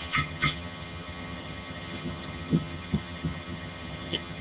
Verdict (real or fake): fake